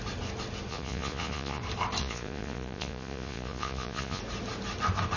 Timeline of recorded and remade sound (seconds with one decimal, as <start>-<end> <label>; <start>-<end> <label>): 0.0-0.7 recorded; 0.7-1.6 remade; 1.6-2.0 recorded; 2.0-4.2 remade; 4.2-5.2 recorded